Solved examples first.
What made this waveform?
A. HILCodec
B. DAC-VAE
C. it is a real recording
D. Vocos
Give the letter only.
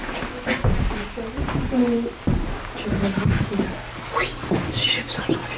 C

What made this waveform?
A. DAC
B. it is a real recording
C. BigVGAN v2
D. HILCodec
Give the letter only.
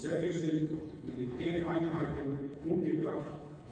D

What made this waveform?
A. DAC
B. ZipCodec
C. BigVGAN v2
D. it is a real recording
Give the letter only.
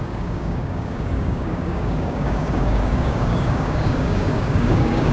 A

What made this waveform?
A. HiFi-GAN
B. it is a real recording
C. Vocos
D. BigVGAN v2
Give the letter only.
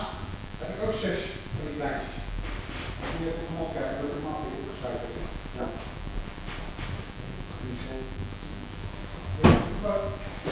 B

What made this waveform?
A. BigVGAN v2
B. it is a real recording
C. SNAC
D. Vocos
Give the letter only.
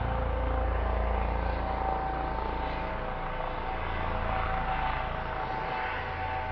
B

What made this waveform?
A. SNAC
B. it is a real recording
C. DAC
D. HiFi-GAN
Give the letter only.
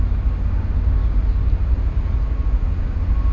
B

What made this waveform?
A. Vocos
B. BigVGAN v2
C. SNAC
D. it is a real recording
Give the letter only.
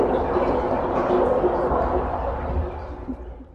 D